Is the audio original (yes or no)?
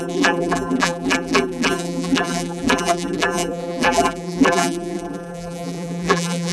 no